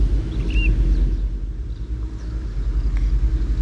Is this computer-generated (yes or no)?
no